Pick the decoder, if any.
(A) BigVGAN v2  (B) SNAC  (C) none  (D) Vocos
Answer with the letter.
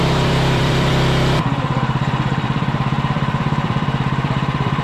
A